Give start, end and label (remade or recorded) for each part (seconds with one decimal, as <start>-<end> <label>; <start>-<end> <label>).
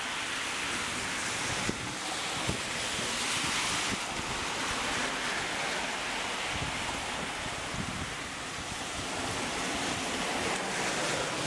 0.0-11.5 recorded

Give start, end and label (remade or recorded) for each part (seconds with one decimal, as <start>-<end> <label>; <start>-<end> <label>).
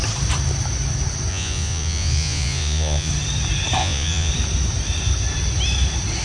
0.0-1.3 recorded; 1.3-3.1 remade; 3.1-3.8 recorded; 3.8-4.3 remade; 4.3-6.2 recorded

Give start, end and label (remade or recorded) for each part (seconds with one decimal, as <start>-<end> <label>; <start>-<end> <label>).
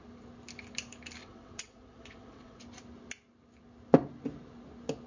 0.0-1.2 recorded; 1.2-2.6 remade; 2.6-5.1 recorded